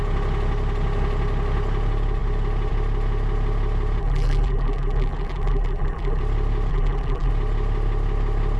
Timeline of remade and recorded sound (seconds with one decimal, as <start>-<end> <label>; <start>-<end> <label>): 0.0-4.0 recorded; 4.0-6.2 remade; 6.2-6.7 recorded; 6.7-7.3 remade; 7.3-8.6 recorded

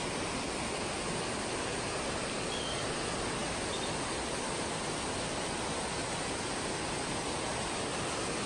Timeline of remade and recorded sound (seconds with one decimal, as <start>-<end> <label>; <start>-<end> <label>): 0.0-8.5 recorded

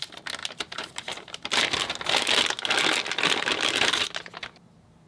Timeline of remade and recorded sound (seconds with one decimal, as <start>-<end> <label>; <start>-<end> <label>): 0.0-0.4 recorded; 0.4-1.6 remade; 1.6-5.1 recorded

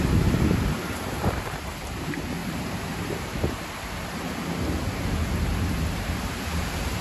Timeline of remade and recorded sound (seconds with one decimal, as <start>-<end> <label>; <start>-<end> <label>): 0.0-2.4 remade; 2.4-6.6 recorded; 6.6-7.0 remade